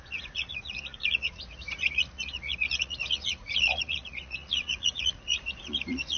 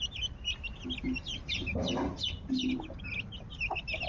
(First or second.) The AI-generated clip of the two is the first